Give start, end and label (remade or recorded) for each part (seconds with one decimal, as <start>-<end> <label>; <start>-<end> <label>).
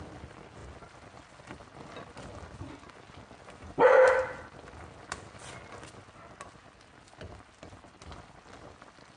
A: 0.0-9.2 recorded